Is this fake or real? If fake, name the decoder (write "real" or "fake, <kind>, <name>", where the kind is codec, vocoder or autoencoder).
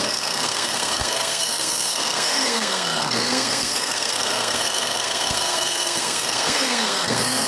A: fake, codec, SNAC